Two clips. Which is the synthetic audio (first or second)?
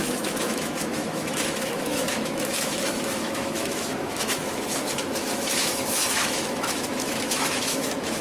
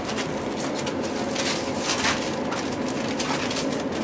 first